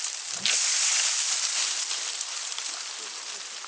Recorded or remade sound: recorded